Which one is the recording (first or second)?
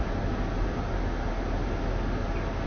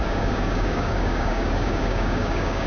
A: first